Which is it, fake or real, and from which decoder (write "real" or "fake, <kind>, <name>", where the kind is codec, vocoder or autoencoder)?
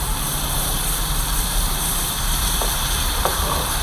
fake, vocoder, BigVGAN v2